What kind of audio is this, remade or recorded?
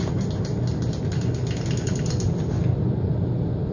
recorded